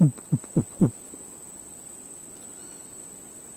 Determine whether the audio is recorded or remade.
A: recorded